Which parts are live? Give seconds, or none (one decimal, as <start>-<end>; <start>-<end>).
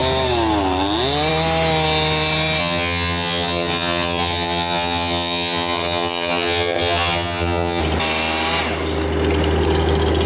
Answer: 0.0-2.6; 7.8-10.3